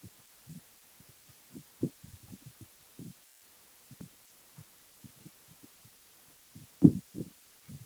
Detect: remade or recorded remade